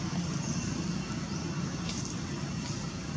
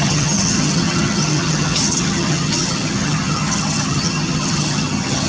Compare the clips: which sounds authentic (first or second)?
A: first